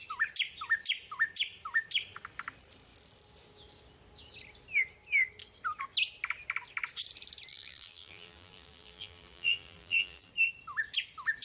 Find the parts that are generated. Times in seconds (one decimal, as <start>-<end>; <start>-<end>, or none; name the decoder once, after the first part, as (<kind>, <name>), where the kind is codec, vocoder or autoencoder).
7.5-10.3 (vocoder, BigVGAN v2)